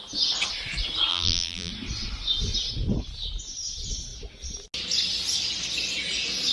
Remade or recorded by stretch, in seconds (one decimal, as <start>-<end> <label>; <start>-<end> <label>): 0.0-1.1 recorded; 1.1-1.7 remade; 1.7-6.5 recorded